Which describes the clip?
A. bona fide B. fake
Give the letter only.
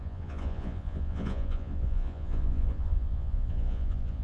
B